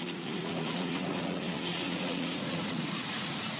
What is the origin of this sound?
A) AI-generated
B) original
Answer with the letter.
A